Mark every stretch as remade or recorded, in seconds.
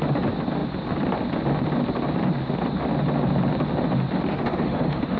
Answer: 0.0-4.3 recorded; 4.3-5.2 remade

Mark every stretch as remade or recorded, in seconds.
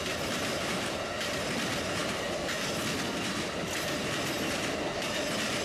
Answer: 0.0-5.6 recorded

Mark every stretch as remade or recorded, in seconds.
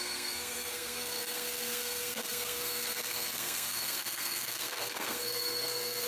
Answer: 0.0-6.1 remade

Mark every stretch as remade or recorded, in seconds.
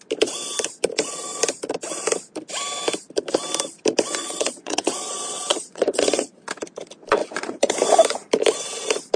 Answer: 0.0-4.2 recorded; 4.2-5.1 remade; 5.1-5.5 recorded; 5.5-6.5 remade; 6.5-7.2 recorded; 7.2-7.7 remade; 7.7-9.2 recorded